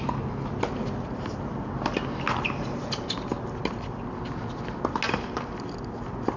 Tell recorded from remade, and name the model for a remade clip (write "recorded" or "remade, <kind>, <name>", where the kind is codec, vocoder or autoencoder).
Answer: recorded